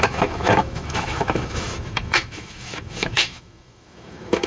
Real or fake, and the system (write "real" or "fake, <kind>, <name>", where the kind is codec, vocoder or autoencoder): fake, autoencoder, DAC-VAE